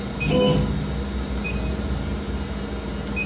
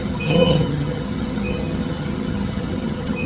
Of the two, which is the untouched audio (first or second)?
first